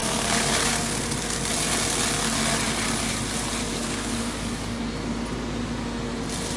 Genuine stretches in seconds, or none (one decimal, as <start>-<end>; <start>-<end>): 1.0-3.7; 4.8-6.6